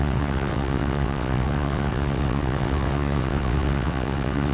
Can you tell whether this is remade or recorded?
remade